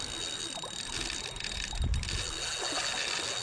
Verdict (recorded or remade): recorded